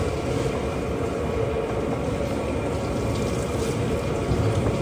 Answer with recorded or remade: recorded